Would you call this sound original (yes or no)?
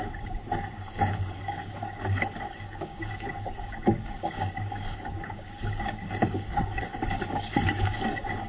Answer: no